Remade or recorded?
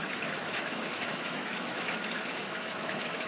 remade